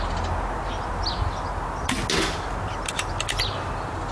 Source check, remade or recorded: recorded